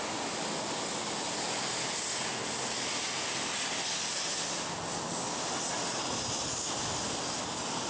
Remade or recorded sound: recorded